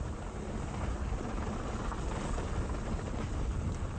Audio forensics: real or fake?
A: real